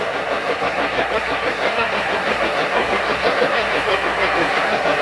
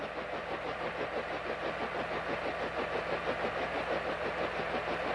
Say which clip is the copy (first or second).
first